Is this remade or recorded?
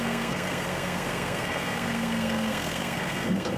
remade